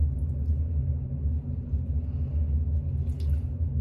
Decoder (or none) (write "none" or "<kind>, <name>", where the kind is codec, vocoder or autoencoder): none